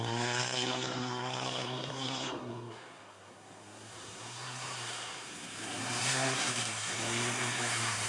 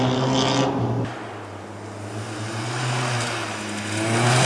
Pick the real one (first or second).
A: second